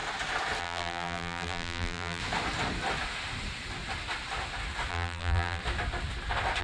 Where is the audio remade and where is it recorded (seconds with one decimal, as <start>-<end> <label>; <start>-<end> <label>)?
0.0-0.6 recorded; 0.6-2.2 remade; 2.2-4.9 recorded; 4.9-5.6 remade; 5.6-6.6 recorded